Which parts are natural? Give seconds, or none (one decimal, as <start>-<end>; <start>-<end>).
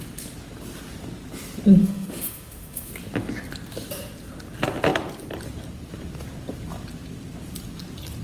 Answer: 0.0-1.8; 2.9-8.2